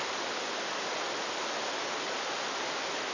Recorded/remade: recorded